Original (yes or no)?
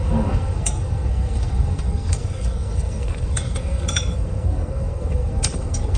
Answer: no